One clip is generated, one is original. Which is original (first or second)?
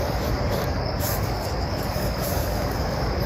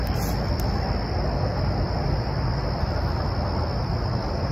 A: second